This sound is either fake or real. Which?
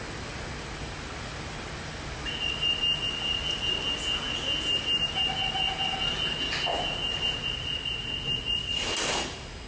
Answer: real